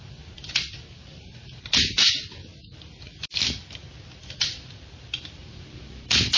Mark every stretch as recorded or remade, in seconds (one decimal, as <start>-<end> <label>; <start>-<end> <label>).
0.0-6.4 recorded